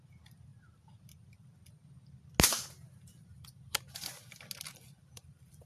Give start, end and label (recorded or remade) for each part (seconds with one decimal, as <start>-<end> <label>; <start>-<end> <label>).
0.0-5.7 recorded

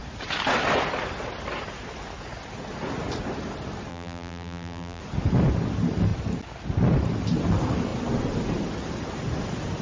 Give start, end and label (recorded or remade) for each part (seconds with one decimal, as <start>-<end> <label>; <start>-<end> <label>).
0.0-3.9 recorded; 3.9-5.0 remade; 5.0-9.8 recorded

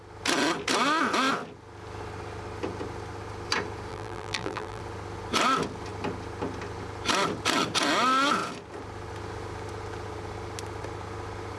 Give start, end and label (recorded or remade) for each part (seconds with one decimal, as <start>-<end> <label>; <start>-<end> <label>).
0.0-3.9 recorded; 3.9-4.8 remade; 4.8-11.6 recorded

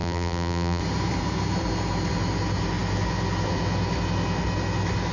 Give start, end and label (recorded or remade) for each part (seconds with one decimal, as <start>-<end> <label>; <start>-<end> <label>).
0.0-0.8 remade; 0.8-5.1 recorded

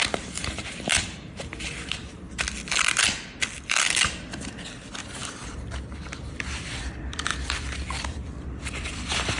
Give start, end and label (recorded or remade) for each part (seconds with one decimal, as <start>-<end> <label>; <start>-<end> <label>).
0.0-1.5 remade; 1.5-2.7 recorded; 2.7-5.2 remade; 5.2-6.6 recorded; 6.6-9.4 remade

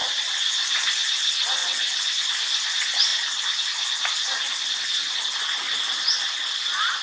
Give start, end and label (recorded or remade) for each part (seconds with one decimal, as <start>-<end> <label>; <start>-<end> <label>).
0.0-0.9 remade; 0.9-1.6 recorded; 1.6-2.2 remade; 2.2-7.0 recorded